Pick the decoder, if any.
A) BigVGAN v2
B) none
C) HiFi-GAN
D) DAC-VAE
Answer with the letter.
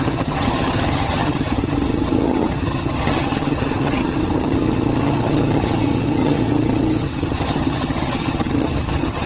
C